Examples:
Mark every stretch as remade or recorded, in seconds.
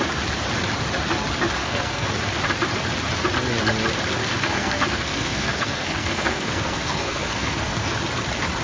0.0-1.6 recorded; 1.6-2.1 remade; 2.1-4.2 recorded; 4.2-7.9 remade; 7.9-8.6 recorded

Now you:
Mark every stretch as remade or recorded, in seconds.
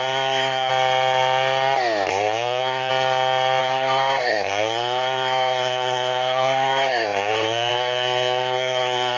0.0-0.7 remade; 0.7-2.1 recorded; 2.1-2.9 remade; 2.9-3.6 recorded; 3.6-9.2 remade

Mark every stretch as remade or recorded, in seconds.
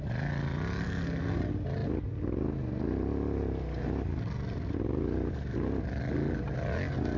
0.0-0.8 recorded; 0.8-1.4 remade; 1.4-7.2 recorded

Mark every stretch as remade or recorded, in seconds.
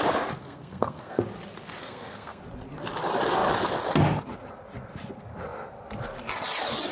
0.0-0.4 recorded; 0.4-1.2 remade; 1.2-1.8 recorded; 1.8-2.4 remade; 2.4-6.9 recorded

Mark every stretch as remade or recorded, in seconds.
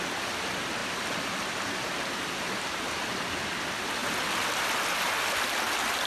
0.0-6.1 recorded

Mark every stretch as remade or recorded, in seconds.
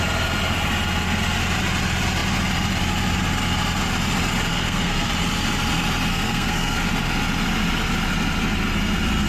0.0-4.5 recorded; 4.5-5.1 remade; 5.1-6.1 recorded; 6.1-6.8 remade; 6.8-9.3 recorded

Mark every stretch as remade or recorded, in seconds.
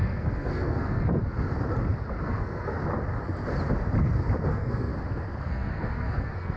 0.0-1.2 remade; 1.2-2.2 recorded; 2.2-2.8 remade; 2.8-4.5 recorded; 4.5-4.9 remade; 4.9-5.4 recorded; 5.4-6.6 remade